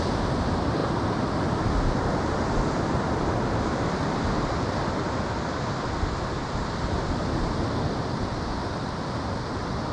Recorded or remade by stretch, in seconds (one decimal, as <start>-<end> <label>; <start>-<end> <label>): 0.0-9.9 recorded